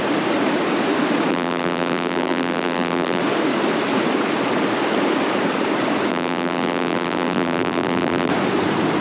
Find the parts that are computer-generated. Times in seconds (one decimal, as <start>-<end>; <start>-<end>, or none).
1.3-3.2; 6.1-8.3

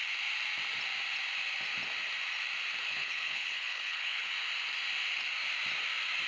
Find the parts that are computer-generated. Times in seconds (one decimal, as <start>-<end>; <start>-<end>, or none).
2.9-4.3